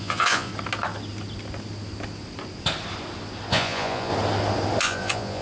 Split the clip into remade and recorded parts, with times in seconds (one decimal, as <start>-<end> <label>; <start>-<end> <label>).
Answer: 0.0-0.5 remade; 0.5-3.5 recorded; 3.5-4.1 remade; 4.1-4.8 recorded; 4.8-5.4 remade